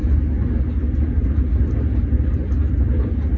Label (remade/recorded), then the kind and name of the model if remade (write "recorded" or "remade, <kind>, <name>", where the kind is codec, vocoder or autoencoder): recorded